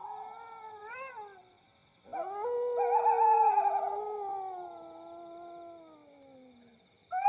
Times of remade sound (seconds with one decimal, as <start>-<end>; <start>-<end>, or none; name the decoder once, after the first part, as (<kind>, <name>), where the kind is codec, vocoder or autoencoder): none